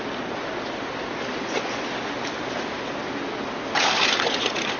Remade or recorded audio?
recorded